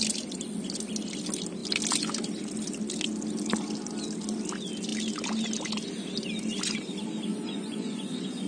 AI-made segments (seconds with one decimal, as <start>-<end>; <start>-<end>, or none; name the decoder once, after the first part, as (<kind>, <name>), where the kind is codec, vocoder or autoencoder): 7.3-8.5 (vocoder, Vocos)